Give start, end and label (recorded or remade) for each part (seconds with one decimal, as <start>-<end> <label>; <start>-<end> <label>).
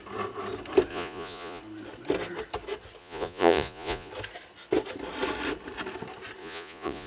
0.0-0.9 recorded; 0.9-1.6 remade; 1.6-3.0 recorded; 3.0-4.1 remade; 4.1-6.4 recorded; 6.4-7.1 remade